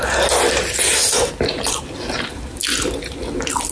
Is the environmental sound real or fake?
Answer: real